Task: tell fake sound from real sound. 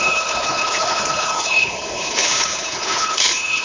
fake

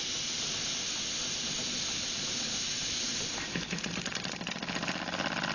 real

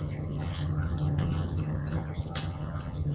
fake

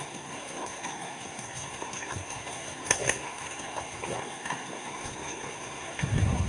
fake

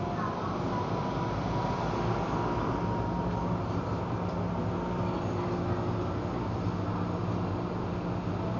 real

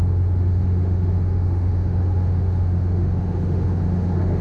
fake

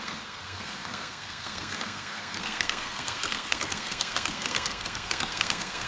fake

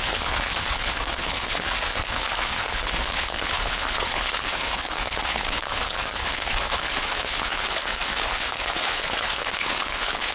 fake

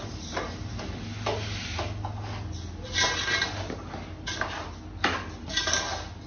real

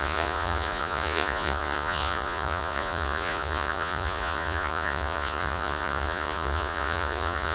fake